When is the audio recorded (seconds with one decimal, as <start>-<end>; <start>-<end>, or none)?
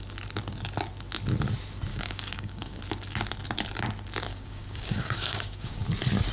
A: 0.0-1.9; 2.8-4.3; 5.8-6.3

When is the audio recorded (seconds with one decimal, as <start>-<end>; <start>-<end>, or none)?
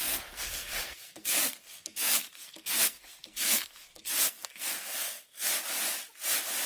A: 5.5-6.7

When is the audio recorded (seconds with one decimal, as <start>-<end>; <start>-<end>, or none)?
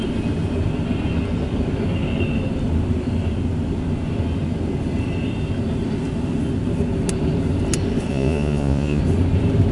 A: 0.0-8.1; 9.0-9.7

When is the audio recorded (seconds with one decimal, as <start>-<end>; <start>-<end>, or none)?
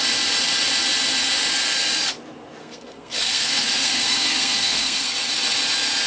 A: 0.0-2.6; 5.1-6.1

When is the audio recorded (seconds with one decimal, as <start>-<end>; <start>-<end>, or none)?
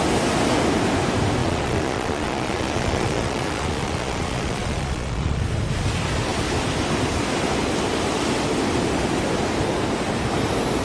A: 0.0-1.4; 5.4-10.8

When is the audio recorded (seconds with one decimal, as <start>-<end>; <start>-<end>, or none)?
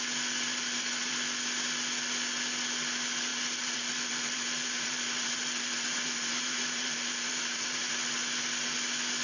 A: 0.0-0.5; 1.1-3.3; 7.9-9.2